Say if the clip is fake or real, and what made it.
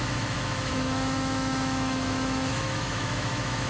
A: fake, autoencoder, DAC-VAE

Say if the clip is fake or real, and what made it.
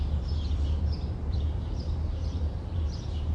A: fake, vocoder, BigVGAN v2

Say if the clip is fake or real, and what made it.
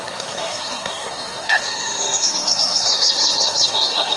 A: fake, codec, SNAC